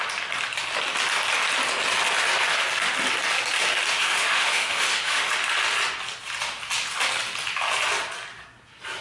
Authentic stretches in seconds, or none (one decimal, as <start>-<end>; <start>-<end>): 0.0-3.9; 5.3-9.0